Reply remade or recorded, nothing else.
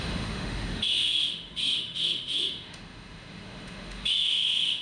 remade